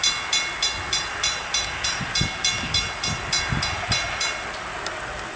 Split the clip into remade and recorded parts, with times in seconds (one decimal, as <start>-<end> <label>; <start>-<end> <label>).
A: 0.0-5.4 recorded